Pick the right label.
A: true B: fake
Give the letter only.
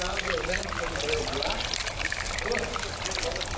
A